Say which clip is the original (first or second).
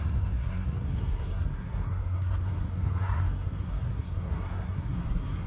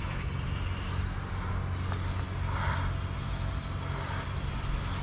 second